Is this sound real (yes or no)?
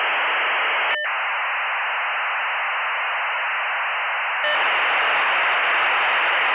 yes